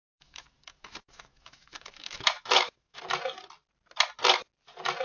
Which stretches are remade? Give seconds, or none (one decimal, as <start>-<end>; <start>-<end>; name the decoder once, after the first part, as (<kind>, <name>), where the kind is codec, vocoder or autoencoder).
0.0-3.0 (autoencoder, DAC-VAE)